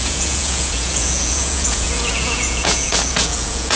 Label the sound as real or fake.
fake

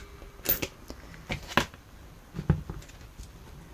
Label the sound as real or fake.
real